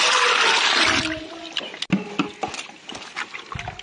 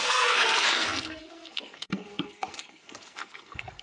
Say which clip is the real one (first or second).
first